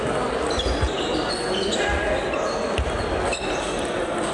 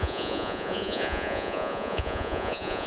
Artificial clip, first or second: second